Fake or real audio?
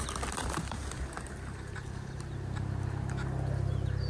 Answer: fake